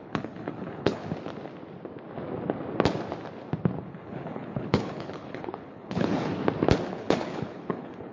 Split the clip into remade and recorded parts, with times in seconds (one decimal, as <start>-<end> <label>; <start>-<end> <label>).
0.0-1.0 remade; 1.0-3.8 recorded; 3.8-6.3 remade; 6.3-6.9 recorded; 6.9-8.1 remade